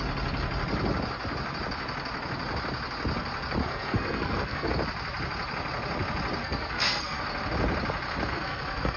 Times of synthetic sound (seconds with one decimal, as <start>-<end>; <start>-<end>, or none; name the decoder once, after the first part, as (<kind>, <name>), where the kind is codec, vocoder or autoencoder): 3.6-4.7 (codec, SNAC); 6.4-7.2; 8.3-9.0